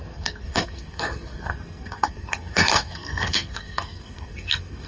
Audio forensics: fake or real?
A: fake